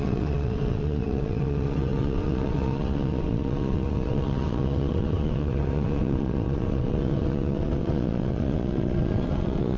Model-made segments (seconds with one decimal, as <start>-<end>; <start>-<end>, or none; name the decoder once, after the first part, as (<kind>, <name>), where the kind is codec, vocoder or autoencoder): 0.0-9.8 (vocoder, WaveNeXt)